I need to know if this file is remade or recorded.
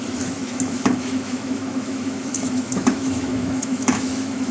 remade